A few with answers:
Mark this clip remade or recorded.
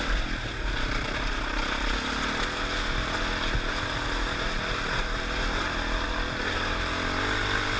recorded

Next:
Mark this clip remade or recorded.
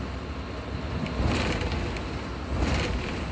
recorded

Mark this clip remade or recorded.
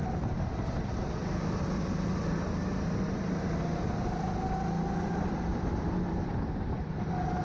recorded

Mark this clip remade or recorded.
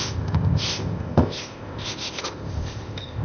remade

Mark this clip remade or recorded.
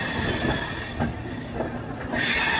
recorded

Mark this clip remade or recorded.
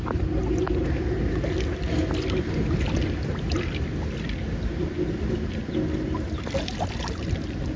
recorded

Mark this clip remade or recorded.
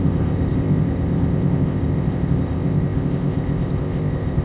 remade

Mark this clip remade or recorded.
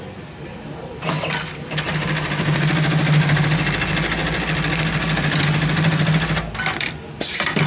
recorded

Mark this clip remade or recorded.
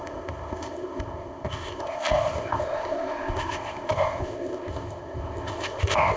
remade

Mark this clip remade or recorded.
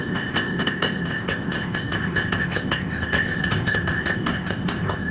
remade